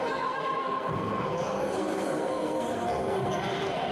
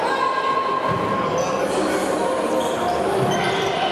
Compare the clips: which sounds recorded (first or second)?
second